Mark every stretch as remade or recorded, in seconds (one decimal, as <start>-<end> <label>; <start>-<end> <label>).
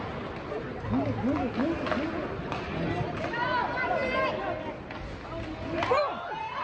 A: 0.0-6.6 recorded